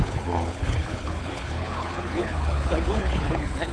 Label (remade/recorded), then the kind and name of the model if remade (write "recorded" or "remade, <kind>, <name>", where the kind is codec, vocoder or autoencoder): remade, codec, HILCodec